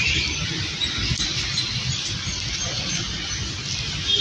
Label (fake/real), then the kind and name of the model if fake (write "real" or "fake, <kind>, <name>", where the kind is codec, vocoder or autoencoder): real